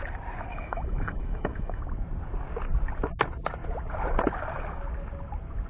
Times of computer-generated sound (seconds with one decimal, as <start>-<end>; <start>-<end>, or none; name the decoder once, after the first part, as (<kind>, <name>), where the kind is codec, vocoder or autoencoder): 0.5-1.8 (autoencoder, DAC-VAE)